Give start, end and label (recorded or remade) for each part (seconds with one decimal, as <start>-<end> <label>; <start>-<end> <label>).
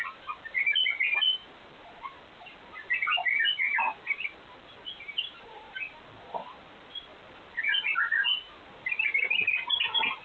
0.0-10.2 recorded